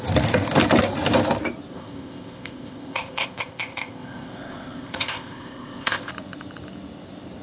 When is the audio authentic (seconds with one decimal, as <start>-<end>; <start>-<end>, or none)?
0.0-1.7; 6.1-7.4